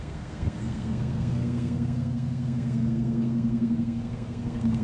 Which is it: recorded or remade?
remade